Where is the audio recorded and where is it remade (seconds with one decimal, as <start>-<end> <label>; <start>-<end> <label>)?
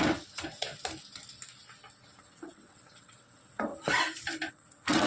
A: 0.0-0.7 remade; 0.7-2.2 recorded; 2.2-3.7 remade; 3.7-4.5 recorded; 4.5-5.1 remade